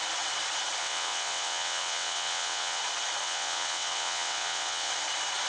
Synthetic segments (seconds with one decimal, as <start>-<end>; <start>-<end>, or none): 0.8-2.8; 3.2-4.9